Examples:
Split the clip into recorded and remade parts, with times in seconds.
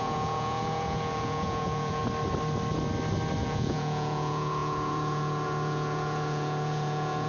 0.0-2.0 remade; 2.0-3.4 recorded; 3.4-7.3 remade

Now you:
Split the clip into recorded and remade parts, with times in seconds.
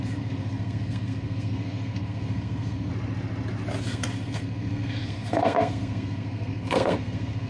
0.0-2.9 remade; 2.9-3.8 recorded; 3.8-7.5 remade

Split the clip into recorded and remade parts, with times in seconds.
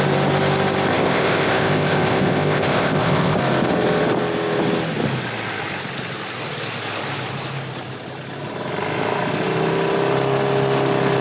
0.0-0.9 recorded; 0.9-3.4 remade; 3.4-11.2 recorded